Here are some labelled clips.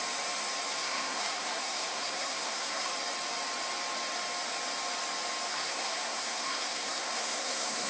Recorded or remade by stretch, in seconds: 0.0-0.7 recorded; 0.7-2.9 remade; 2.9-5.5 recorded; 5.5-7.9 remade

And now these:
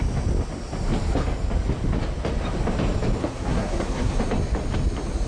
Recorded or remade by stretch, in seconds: 0.0-3.2 recorded; 3.2-4.2 remade; 4.2-5.3 recorded

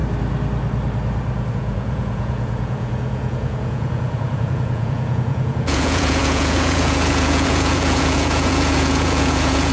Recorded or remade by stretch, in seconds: 0.0-1.5 recorded; 1.5-9.7 remade